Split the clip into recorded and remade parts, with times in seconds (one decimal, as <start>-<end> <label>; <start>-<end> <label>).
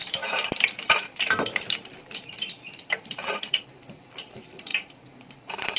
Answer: 0.0-5.8 remade